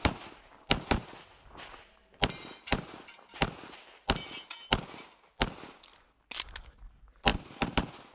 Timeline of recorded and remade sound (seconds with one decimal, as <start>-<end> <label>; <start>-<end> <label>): 0.0-8.1 recorded